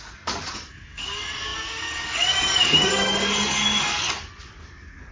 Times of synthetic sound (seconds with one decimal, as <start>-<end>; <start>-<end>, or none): 0.0-5.1